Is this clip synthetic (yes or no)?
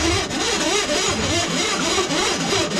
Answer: no